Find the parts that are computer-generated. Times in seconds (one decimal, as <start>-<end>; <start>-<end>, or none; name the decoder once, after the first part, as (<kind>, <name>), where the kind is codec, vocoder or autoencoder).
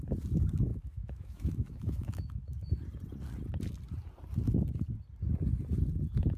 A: 0.7-2.7 (autoencoder, DAC-VAE)